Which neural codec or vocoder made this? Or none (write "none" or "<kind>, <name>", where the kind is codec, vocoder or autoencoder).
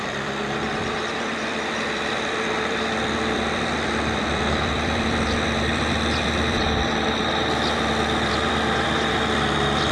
vocoder, BigVGAN v2